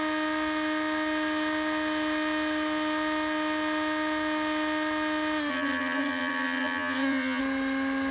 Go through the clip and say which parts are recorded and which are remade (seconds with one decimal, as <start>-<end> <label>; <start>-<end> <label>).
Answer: 0.0-5.5 recorded; 5.5-7.4 remade; 7.4-8.1 recorded